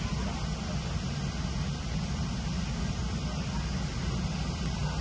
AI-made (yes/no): no